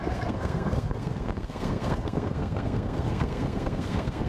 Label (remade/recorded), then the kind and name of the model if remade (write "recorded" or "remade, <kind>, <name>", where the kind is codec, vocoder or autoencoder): remade, codec, SNAC